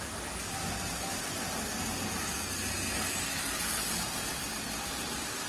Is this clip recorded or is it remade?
recorded